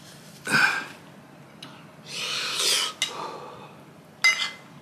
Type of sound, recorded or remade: recorded